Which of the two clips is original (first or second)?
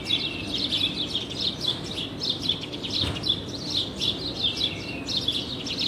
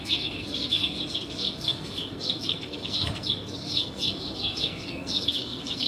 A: first